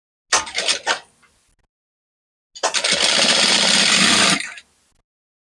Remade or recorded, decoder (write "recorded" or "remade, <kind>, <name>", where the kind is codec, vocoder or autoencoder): recorded